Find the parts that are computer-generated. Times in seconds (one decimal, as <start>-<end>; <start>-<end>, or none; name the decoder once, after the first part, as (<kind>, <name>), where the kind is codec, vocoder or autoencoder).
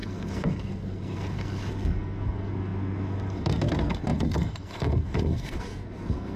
0.0-6.4 (codec, SNAC)